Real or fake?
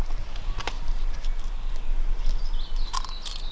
real